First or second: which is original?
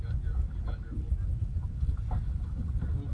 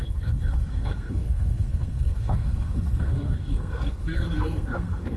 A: first